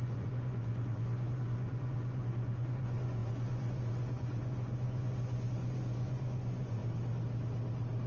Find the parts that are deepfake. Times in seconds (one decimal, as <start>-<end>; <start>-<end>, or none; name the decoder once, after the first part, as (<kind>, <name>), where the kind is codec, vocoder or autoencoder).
0.0-6.8 (vocoder, Vocos)